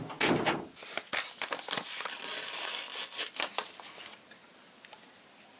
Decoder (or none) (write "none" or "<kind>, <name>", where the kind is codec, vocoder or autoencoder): none